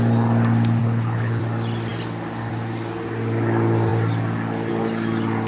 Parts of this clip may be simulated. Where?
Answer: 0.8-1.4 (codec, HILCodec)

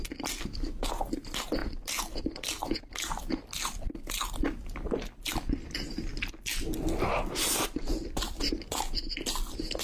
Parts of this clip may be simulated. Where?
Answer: 1.6-5.7 (vocoder, BigVGAN v2); 6.5-8.8

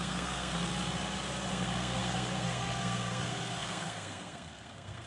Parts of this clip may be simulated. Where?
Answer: 0.0-0.7 (codec, SNAC); 1.5-5.1